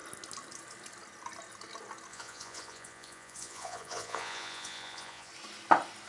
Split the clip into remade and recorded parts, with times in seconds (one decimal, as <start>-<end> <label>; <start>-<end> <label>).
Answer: 0.0-2.1 recorded; 2.1-5.3 remade; 5.3-6.1 recorded